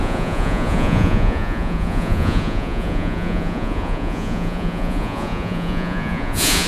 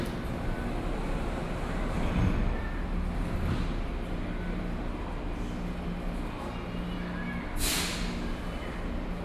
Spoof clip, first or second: first